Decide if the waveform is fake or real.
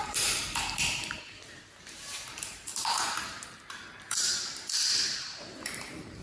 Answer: fake